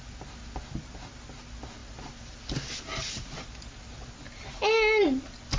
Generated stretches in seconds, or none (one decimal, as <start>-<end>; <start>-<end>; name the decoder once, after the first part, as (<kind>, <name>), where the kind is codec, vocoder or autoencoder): none